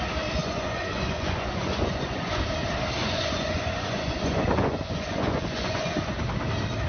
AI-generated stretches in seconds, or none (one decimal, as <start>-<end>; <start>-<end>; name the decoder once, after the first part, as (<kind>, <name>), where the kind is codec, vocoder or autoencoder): 0.4-2.4 (vocoder, Vocos); 3.0-6.2

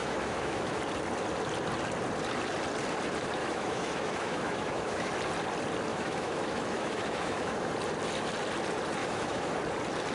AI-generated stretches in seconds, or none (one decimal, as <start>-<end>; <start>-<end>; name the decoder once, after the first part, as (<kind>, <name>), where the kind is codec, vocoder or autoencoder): 0.0-0.8 (autoencoder, DAC-VAE); 3.4-5.1; 5.9-7.7; 9.0-9.6

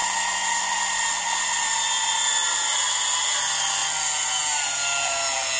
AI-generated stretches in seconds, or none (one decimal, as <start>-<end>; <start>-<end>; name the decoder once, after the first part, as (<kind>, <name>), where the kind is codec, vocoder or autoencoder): none

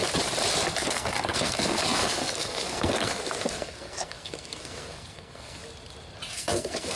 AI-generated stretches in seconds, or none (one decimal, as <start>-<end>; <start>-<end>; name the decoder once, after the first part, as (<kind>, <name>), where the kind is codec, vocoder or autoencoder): 0.9-5.6 (codec, SNAC); 6.3-7.0